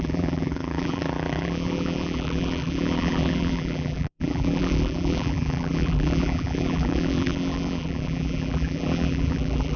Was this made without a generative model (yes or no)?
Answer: no